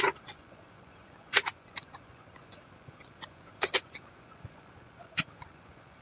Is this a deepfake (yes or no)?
yes